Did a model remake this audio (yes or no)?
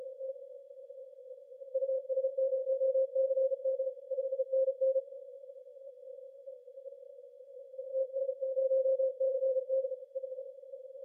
no